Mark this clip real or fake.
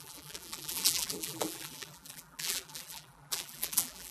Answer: fake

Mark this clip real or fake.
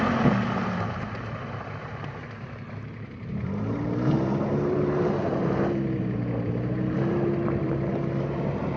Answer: fake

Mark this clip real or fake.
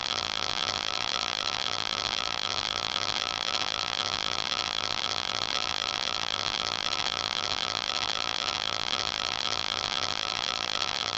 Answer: fake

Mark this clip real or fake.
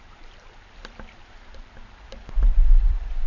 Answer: fake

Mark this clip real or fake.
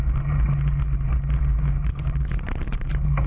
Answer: real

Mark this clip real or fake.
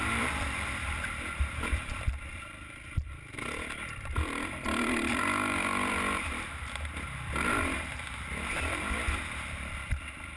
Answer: fake